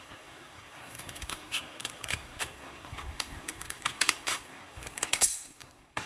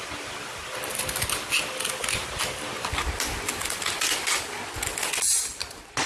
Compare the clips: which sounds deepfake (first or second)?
first